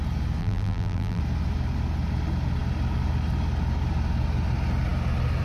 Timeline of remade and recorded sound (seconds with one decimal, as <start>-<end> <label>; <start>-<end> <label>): 0.0-0.4 recorded; 0.4-1.2 remade; 1.2-5.4 recorded